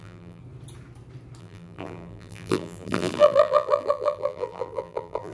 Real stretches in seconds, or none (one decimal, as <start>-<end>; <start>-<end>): 0.4-1.4